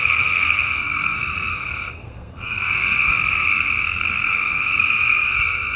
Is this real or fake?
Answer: fake